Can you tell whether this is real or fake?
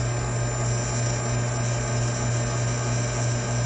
real